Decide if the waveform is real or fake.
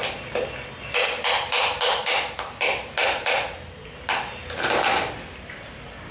real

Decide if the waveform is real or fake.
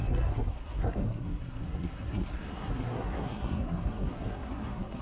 fake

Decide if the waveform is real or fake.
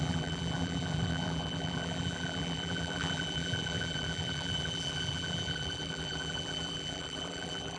fake